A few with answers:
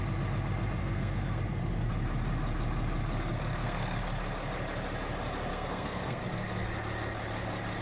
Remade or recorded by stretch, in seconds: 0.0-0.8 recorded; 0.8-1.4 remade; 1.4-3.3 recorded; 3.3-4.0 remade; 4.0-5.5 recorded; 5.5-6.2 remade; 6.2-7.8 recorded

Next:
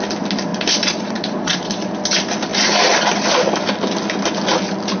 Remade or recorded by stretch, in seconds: 0.0-0.5 recorded; 0.5-1.9 remade; 1.9-5.0 recorded

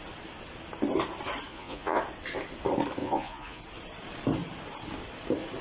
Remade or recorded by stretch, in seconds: 0.0-1.5 recorded; 1.5-2.0 remade; 2.0-3.0 recorded; 3.0-3.6 remade; 3.6-5.6 recorded